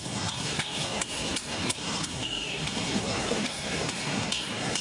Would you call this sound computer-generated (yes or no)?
yes